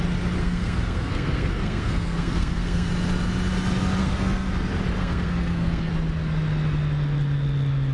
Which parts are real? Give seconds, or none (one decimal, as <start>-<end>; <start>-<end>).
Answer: 0.0-0.4; 2.9-4.0; 4.5-5.0; 5.9-7.9